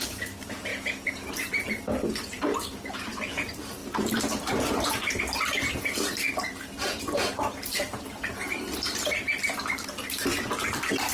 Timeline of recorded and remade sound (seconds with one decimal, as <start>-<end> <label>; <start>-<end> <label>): 0.0-0.7 remade; 0.7-1.3 recorded; 1.3-11.1 remade